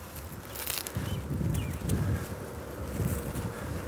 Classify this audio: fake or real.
fake